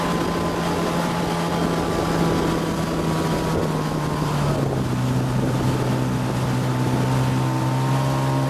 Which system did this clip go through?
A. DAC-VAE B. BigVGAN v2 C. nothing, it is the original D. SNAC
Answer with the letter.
C